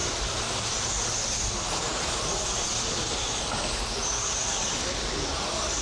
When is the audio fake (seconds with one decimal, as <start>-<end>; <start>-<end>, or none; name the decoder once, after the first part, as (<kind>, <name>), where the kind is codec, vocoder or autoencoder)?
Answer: 0.0-3.5 (vocoder, BigVGAN v2); 4.0-5.3

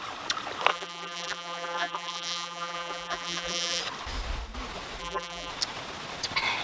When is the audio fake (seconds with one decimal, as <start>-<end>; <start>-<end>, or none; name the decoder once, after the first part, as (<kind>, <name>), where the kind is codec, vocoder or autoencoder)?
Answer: 0.7-3.8 (vocoder, BigVGAN v2); 5.0-5.5

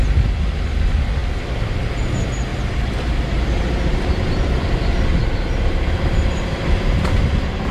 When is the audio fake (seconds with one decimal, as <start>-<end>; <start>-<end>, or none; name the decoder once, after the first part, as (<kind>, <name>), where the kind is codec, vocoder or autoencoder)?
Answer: 2.5-5.2 (vocoder, BigVGAN v2)

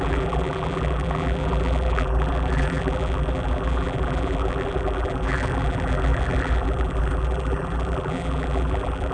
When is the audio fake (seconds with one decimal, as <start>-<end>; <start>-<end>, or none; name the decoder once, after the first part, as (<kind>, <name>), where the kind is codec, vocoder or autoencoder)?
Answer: 0.0-9.1 (vocoder, BigVGAN v2)

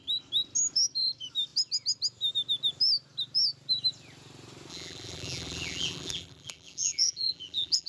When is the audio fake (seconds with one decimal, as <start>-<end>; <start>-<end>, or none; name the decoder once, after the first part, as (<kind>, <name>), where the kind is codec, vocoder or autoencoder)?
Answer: 4.7-7.9 (vocoder, BigVGAN v2)